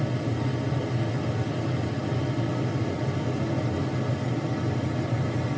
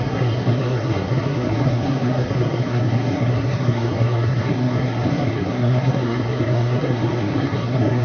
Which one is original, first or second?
first